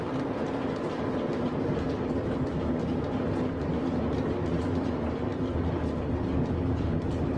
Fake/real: real